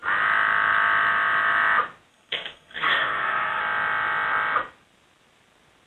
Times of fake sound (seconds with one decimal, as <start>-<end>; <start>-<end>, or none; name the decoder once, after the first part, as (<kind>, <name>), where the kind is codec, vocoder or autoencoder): 2.1-3.6 (codec, SNAC)